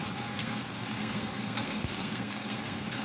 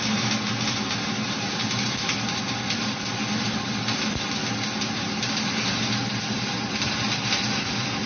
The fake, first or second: first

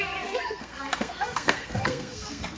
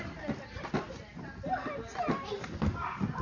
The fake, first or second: first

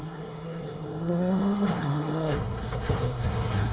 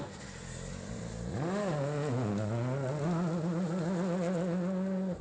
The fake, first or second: first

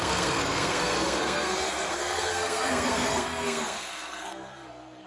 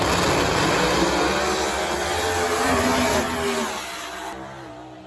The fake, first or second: first